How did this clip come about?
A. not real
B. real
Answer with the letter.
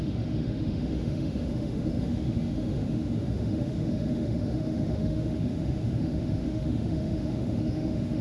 A